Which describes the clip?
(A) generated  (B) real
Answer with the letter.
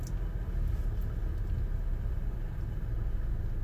B